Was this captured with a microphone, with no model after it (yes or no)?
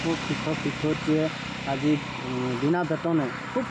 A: yes